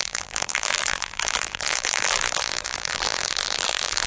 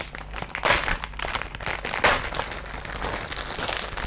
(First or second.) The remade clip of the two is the first